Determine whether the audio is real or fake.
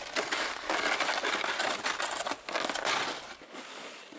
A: real